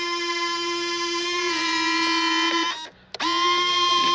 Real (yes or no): yes